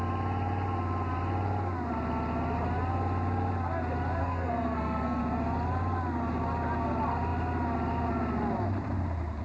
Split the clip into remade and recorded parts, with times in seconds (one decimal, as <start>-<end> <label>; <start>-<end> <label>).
0.0-4.2 recorded; 4.2-5.2 remade; 5.2-9.4 recorded